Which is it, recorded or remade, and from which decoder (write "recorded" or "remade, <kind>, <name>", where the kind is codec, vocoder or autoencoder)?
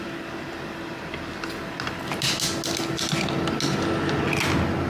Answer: recorded